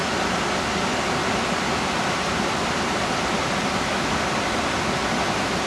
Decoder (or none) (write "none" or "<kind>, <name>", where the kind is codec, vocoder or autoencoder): none